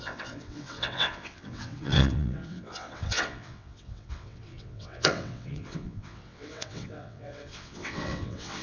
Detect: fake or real fake